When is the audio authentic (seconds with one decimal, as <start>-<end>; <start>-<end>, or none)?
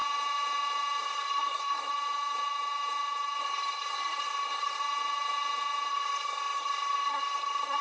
0.0-1.0; 1.9-3.4; 4.8-5.9